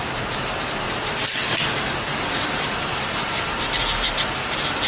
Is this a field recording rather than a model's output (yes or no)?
no